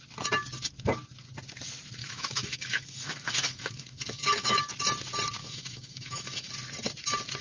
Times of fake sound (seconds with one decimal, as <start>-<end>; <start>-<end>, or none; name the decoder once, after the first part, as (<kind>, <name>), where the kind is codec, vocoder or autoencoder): 2.0-4.6 (autoencoder, DAC-VAE); 5.4-6.5